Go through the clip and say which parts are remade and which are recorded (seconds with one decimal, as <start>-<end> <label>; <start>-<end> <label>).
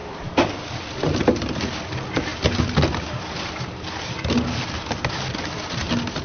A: 0.0-0.8 remade; 0.8-6.2 recorded